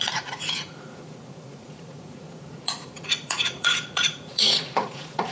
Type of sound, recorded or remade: remade